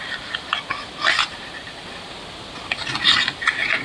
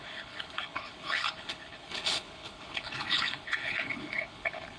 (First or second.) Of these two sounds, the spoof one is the second